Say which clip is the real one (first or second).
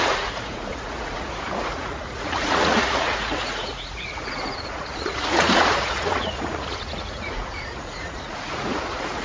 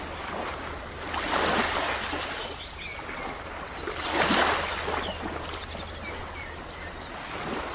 second